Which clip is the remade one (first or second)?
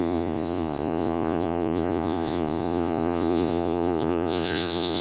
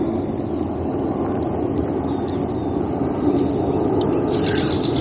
first